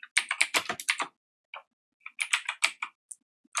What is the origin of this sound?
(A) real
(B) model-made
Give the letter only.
A